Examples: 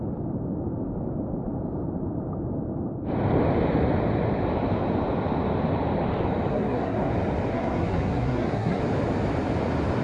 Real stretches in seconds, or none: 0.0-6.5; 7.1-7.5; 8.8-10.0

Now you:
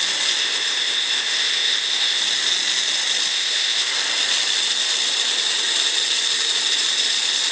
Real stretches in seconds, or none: 0.0-0.4; 2.2-3.3; 3.9-7.5

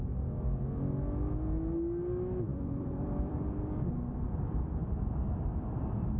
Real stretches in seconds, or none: 0.0-2.5; 3.8-6.2

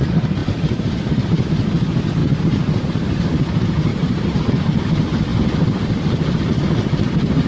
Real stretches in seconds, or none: 0.0-0.4; 1.5-3.9; 4.5-7.5

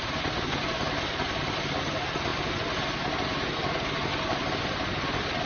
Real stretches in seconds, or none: 0.0-5.5

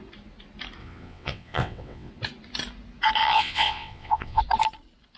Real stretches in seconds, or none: 0.0-0.8; 2.1-3.2; 4.4-5.2